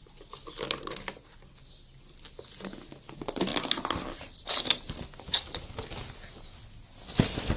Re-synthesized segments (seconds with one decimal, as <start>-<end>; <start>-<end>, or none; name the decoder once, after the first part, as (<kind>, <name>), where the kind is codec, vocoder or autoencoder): none